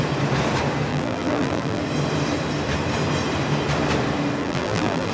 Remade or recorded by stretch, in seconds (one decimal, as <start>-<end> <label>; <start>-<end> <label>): 0.0-0.9 recorded; 0.9-1.8 remade; 1.8-4.4 recorded; 4.4-5.1 remade